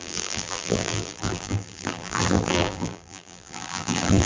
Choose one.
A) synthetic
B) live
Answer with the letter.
A